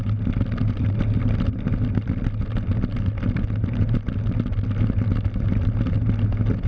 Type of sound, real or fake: real